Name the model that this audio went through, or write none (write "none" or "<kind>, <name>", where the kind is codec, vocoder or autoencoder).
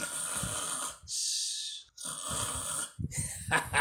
none